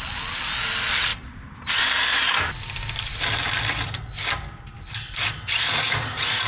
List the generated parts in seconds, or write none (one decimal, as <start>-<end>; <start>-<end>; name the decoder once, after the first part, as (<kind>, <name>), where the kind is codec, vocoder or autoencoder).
1.1-4.2 (vocoder, BigVGAN v2)